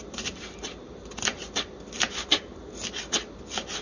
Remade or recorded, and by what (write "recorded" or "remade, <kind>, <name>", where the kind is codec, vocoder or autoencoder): recorded